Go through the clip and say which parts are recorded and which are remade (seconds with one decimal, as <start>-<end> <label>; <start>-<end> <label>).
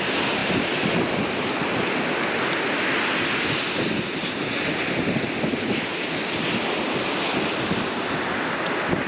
0.0-9.1 recorded